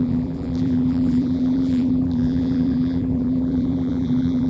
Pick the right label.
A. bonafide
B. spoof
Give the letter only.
B